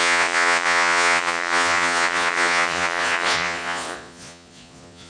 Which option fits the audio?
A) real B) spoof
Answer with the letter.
B